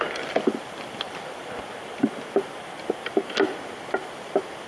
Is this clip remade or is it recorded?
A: recorded